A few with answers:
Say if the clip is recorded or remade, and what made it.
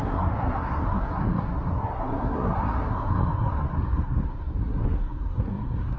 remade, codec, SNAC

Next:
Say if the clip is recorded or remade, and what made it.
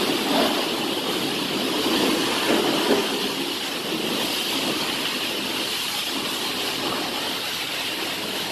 recorded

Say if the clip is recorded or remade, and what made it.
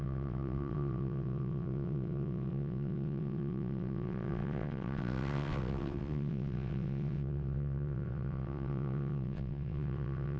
remade, vocoder, WaveNeXt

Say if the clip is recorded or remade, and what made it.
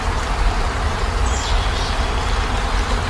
recorded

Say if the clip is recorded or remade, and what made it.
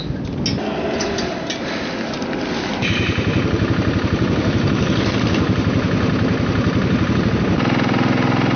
recorded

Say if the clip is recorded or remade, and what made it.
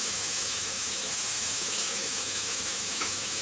remade, autoencoder, DAC-VAE